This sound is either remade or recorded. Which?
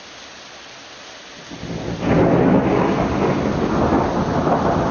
recorded